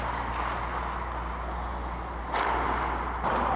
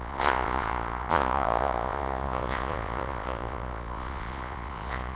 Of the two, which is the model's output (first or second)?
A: second